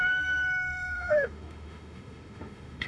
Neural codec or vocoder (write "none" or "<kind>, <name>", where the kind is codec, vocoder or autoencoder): autoencoder, DAC-VAE